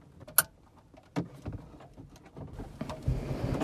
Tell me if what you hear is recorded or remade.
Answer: recorded